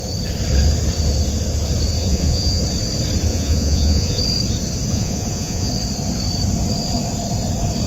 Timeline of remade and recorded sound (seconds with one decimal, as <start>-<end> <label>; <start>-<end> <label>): 0.0-2.0 recorded; 2.0-2.6 remade; 2.6-3.3 recorded; 3.3-4.2 remade; 4.2-4.9 recorded; 4.9-5.7 remade; 5.7-7.9 recorded